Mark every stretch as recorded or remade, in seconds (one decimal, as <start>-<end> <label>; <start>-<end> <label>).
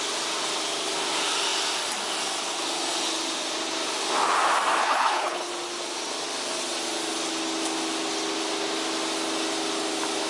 0.0-4.8 recorded; 4.8-5.5 remade; 5.5-10.3 recorded